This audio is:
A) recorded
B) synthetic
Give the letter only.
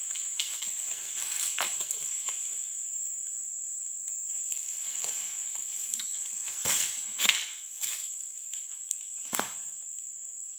B